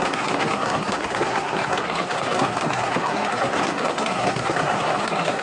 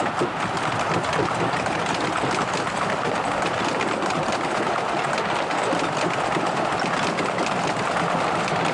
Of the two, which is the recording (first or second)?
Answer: second